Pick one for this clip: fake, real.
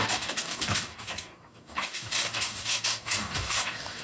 fake